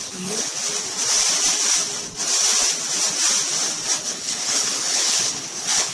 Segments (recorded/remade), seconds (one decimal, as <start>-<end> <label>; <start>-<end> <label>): 0.0-0.5 remade; 0.5-4.0 recorded; 4.0-5.9 remade